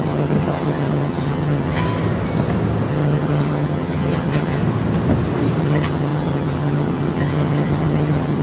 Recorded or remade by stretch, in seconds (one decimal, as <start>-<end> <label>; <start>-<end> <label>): 0.0-1.8 remade; 1.8-2.9 recorded; 2.9-4.6 remade; 4.6-5.6 recorded; 5.6-8.4 remade